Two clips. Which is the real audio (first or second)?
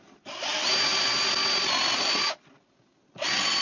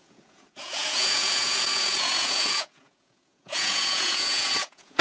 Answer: first